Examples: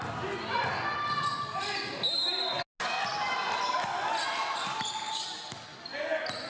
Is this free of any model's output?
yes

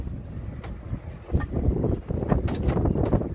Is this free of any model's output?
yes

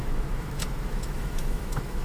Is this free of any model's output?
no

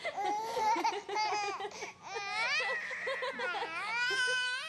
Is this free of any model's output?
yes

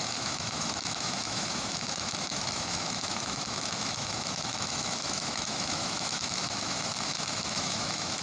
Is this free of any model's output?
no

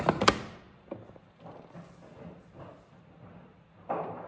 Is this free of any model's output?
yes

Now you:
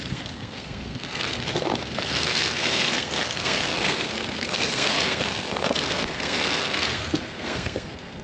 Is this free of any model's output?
no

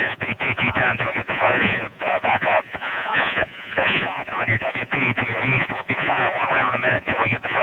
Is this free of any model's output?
no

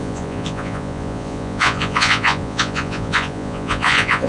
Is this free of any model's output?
no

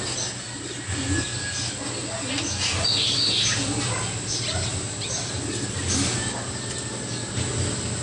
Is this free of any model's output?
yes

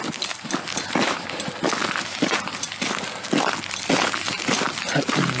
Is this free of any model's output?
yes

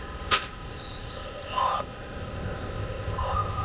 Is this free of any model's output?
no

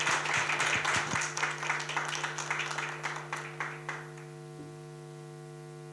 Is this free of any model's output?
yes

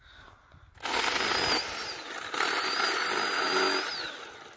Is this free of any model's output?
yes